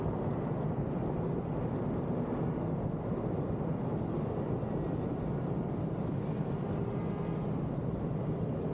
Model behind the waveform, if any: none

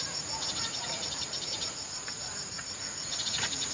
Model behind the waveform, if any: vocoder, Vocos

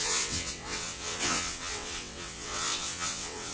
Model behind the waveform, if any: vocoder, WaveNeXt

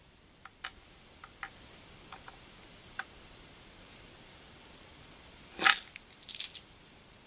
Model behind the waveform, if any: vocoder, BigVGAN v2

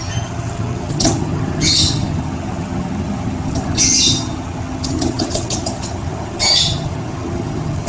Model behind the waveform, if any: vocoder, HiFi-GAN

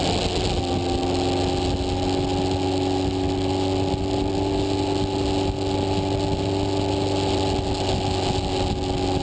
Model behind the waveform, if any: none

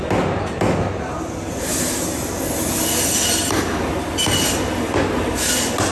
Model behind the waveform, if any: none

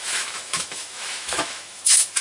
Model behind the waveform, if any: autoencoder, DAC-VAE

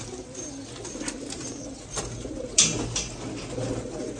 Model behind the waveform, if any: none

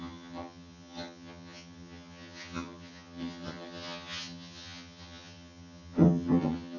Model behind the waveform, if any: vocoder, HiFi-GAN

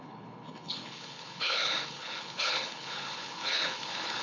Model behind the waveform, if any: codec, HILCodec